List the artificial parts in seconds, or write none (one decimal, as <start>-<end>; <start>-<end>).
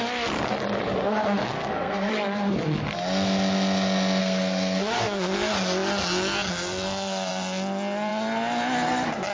1.5-2.1; 4.2-5.3